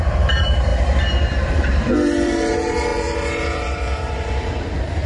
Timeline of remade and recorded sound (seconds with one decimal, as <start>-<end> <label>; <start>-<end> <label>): 0.0-0.7 remade; 0.7-1.5 recorded; 1.5-5.1 remade